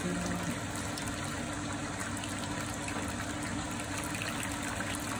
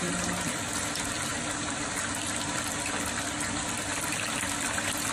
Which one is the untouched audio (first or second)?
first